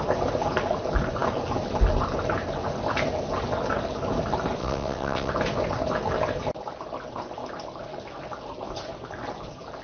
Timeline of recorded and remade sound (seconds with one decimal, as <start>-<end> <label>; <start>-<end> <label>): 0.0-4.6 recorded; 4.6-5.3 remade; 5.3-9.8 recorded